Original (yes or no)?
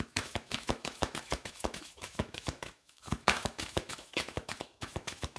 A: no